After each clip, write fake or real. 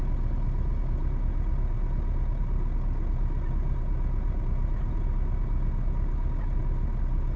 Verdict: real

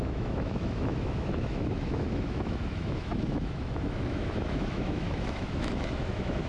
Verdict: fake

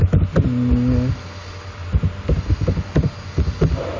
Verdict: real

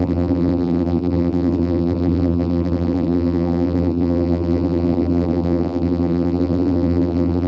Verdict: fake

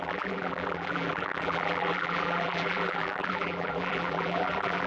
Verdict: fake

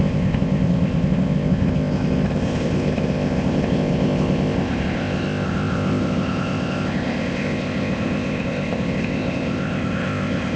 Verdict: fake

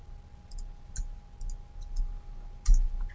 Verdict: real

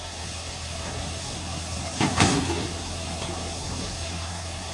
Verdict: fake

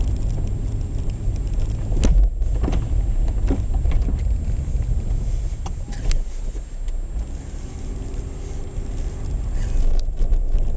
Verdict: real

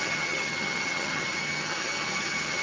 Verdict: fake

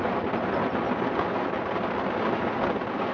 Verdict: real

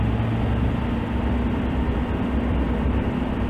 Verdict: real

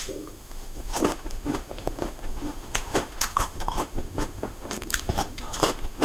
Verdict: fake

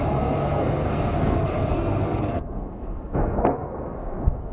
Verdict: fake